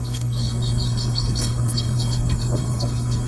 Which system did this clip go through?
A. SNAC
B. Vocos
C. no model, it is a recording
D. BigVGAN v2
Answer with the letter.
A